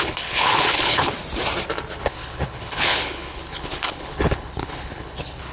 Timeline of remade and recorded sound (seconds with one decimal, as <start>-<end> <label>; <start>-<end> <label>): 0.0-1.1 remade; 1.1-2.0 recorded; 2.0-5.5 remade